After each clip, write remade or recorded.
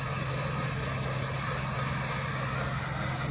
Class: recorded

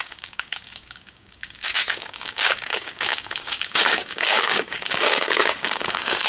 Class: remade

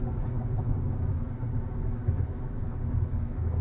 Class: remade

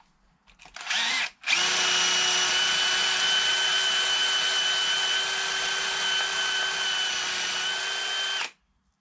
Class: recorded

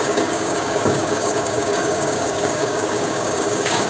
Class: remade